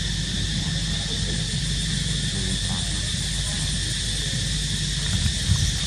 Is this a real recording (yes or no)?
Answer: yes